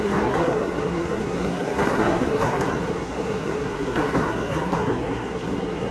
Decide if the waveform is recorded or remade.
remade